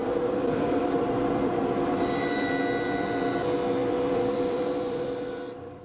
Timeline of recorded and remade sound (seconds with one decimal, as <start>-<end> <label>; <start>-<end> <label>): 0.0-2.5 remade; 2.5-3.8 recorded; 3.8-5.8 remade